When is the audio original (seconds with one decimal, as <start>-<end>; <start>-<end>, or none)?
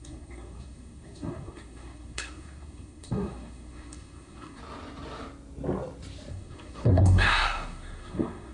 4.6-6.3